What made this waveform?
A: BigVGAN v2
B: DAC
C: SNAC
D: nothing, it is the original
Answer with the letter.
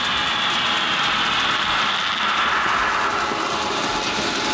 D